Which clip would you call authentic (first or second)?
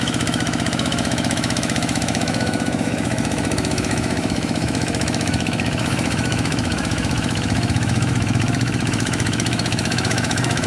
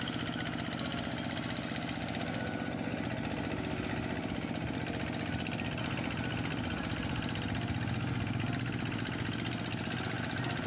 second